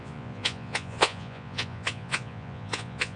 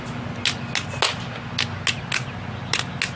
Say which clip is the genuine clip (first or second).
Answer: second